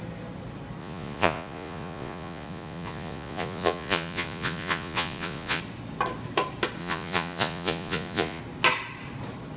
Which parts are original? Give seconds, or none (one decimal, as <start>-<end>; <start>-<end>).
0.0-0.8; 5.6-6.8; 8.4-9.6